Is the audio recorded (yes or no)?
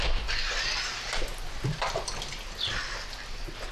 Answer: yes